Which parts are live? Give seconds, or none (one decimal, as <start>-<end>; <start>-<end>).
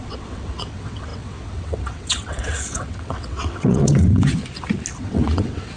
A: 4.4-5.0